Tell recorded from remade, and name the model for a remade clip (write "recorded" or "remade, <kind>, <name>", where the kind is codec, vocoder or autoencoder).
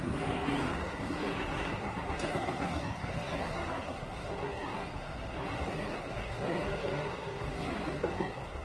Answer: remade, codec, SNAC